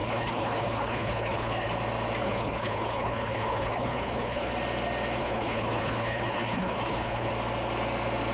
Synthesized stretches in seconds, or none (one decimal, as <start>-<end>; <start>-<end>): 0.0-1.7; 2.2-4.5; 5.2-7.3

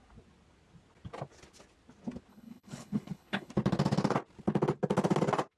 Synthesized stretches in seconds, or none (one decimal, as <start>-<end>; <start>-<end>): 2.3-3.5

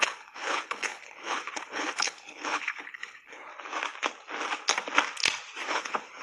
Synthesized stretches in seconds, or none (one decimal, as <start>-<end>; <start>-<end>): 0.0-3.5; 5.7-6.2

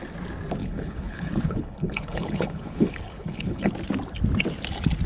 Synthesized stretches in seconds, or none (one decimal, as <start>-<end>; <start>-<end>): 0.6-3.7

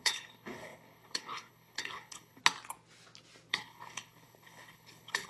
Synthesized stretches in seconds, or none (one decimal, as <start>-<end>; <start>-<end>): 0.0-2.4; 3.5-5.3

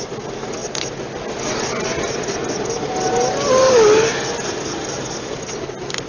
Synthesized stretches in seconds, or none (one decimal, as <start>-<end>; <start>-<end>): none

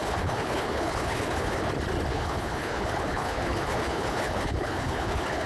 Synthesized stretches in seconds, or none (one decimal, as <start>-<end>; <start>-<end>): 0.0-1.7; 2.1-5.5

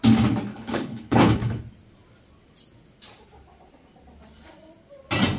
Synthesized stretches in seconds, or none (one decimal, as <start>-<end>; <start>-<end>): 0.5-1.6